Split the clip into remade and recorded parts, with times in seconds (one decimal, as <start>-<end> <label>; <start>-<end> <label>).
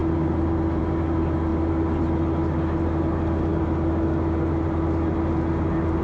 0.0-6.0 recorded